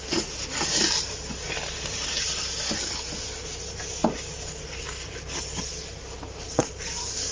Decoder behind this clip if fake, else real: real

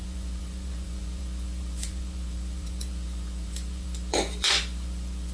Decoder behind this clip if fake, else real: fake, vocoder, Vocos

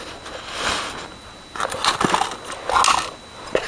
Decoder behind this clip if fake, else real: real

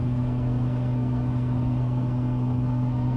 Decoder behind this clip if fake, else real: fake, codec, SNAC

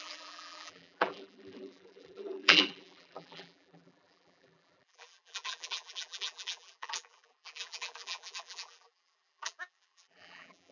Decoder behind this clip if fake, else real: fake, vocoder, BigVGAN v2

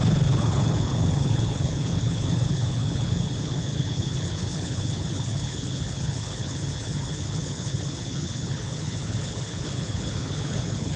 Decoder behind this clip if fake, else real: fake, codec, HILCodec